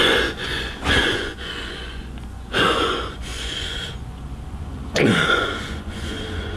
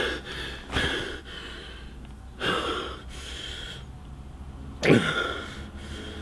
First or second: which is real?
second